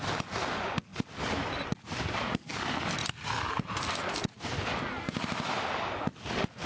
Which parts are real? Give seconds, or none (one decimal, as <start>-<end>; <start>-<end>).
0.0-6.7